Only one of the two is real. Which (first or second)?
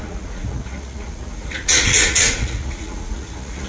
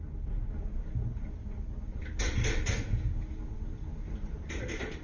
second